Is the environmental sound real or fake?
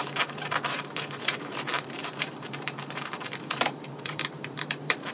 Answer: fake